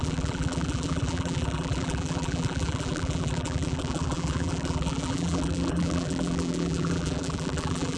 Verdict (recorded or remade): remade